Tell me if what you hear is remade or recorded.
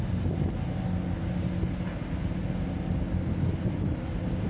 recorded